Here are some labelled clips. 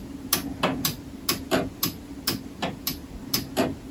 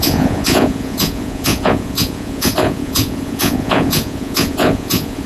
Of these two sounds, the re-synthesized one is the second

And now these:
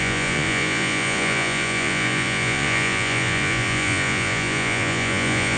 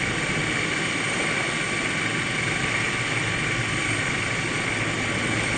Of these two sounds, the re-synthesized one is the first